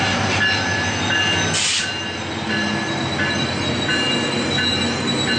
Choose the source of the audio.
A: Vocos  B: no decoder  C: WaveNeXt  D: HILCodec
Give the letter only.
B